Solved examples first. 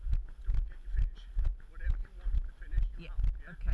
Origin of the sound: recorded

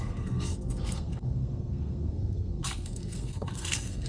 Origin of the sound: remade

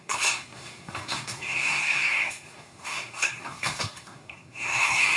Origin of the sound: remade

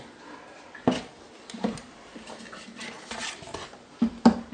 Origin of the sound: recorded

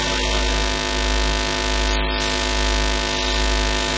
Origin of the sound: recorded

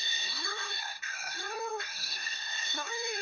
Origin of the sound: remade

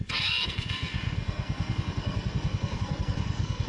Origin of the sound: remade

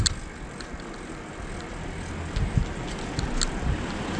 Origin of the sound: recorded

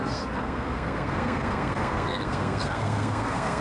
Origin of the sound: remade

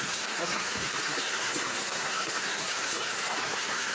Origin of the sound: remade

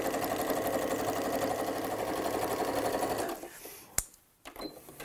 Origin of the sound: recorded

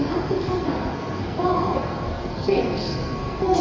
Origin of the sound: remade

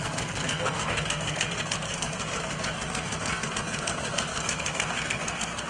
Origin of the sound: remade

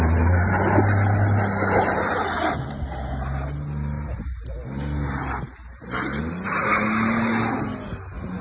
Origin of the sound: recorded